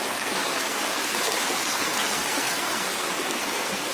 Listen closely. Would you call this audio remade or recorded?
remade